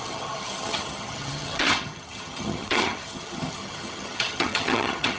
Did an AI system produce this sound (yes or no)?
yes